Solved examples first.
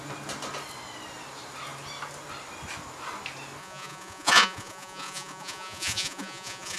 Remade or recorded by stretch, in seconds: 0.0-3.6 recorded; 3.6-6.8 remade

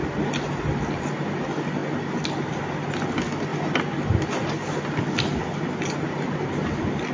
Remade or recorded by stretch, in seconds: 0.0-7.1 recorded

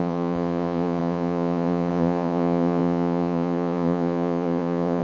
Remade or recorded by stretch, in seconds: 0.0-5.0 remade

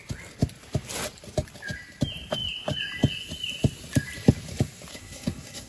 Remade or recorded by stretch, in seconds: 0.0-4.9 recorded; 4.9-5.7 remade